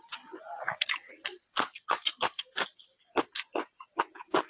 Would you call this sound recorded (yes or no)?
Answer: yes